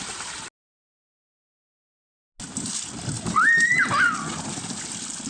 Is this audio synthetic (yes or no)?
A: no